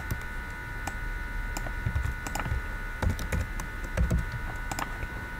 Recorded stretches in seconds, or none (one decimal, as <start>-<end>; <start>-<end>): 0.0-5.4